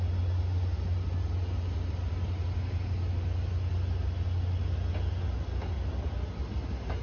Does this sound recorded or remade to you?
recorded